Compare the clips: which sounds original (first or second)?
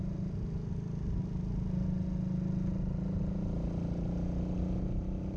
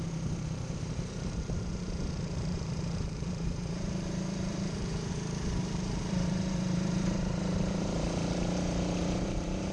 first